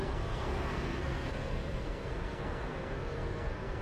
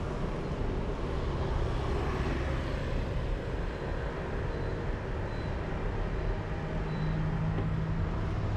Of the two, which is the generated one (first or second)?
first